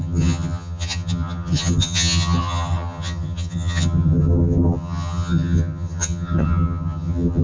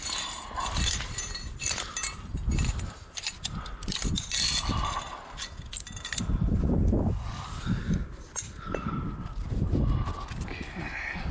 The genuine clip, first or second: second